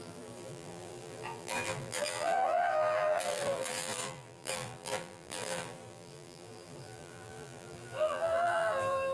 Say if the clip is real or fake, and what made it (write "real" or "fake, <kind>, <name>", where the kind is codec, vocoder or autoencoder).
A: fake, vocoder, BigVGAN v2